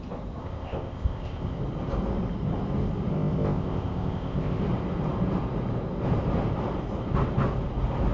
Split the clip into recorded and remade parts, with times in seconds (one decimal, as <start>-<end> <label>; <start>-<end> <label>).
0.0-0.4 recorded; 0.4-1.6 remade; 1.6-3.1 recorded; 3.1-4.6 remade; 4.6-8.1 recorded